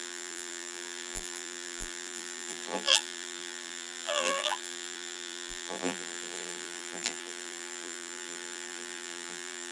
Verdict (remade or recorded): remade